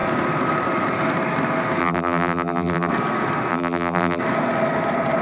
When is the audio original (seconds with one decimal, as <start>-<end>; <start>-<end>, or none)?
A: 0.0-1.8; 2.9-3.5; 4.2-5.2